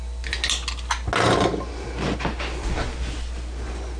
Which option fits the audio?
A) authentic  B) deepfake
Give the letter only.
A